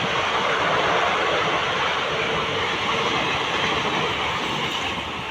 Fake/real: real